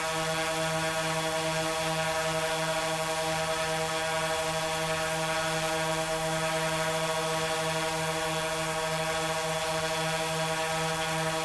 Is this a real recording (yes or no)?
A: yes